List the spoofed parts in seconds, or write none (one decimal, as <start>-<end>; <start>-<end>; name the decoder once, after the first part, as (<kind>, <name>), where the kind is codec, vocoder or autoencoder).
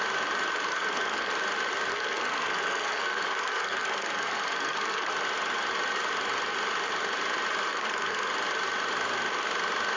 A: 0.7-1.3 (codec, SNAC); 1.9-5.1; 7.7-8.3